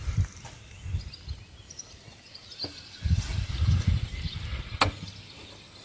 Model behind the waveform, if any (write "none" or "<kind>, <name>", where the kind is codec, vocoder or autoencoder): none